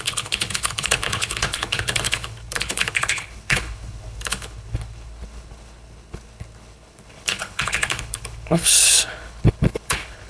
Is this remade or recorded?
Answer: remade